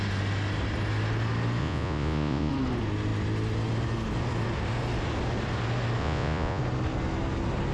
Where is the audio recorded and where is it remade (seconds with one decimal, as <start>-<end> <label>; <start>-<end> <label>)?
0.0-1.6 recorded; 1.6-2.5 remade; 2.5-6.0 recorded; 6.0-6.6 remade; 6.6-7.7 recorded